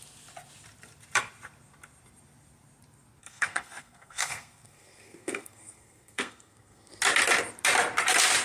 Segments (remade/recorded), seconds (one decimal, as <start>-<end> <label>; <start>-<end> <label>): 0.0-3.2 recorded; 3.2-6.9 remade; 6.9-8.4 recorded